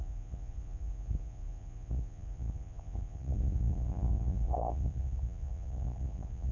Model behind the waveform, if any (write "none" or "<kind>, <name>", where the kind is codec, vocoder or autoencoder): vocoder, Vocos